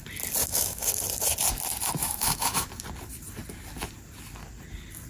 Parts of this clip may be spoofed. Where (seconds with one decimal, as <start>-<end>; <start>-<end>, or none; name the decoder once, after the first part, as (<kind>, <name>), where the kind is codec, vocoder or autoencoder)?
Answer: 0.4-0.9 (autoencoder, DAC-VAE); 2.0-2.7